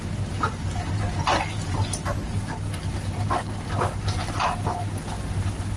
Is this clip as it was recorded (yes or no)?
yes